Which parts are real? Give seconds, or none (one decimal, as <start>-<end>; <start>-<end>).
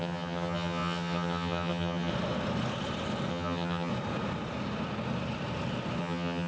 2.1-3.3; 3.9-6.0